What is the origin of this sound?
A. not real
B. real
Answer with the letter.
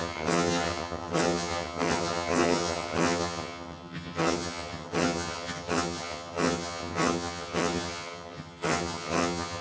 A